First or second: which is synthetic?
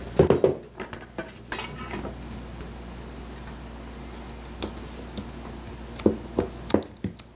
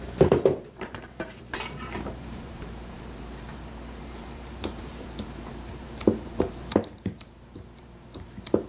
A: second